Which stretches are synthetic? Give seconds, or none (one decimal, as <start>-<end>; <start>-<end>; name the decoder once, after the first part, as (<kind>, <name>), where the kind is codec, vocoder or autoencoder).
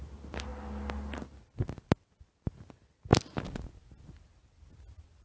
none